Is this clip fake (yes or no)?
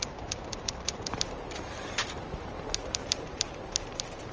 yes